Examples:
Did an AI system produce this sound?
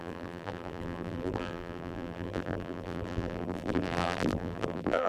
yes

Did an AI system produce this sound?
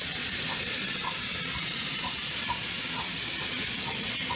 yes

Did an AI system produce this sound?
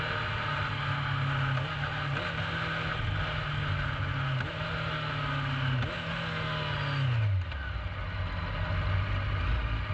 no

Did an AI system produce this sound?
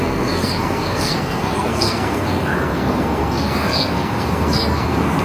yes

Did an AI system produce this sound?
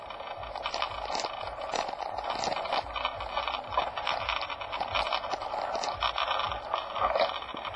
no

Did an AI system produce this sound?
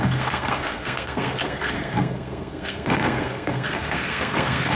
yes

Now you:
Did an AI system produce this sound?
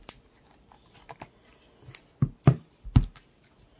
no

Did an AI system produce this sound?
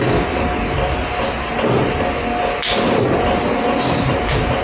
no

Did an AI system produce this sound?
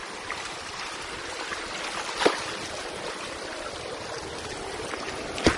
no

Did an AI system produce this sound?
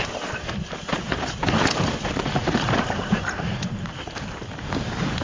yes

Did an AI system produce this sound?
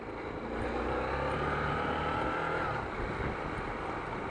no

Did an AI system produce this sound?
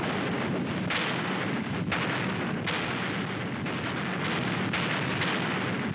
no